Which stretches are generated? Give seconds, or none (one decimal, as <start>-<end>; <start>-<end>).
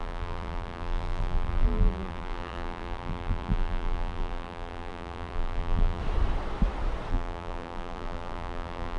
0.0-6.0; 7.1-9.0